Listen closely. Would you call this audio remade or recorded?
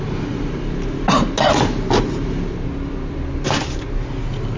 recorded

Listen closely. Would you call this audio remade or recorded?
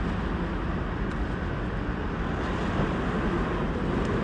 recorded